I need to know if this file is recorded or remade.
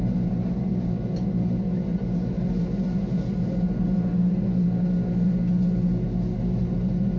recorded